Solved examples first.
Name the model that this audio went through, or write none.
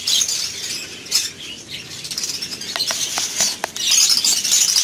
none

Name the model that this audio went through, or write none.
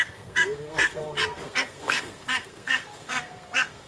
codec, SNAC